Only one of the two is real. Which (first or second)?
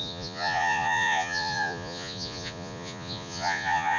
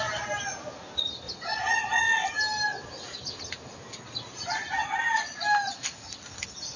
second